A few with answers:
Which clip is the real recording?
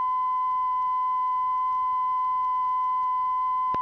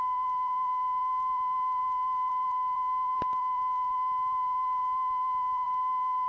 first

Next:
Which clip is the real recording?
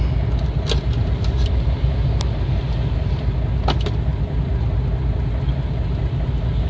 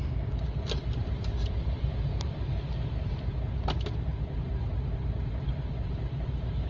first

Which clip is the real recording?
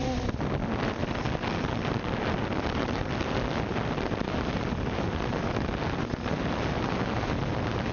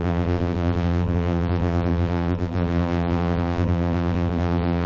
first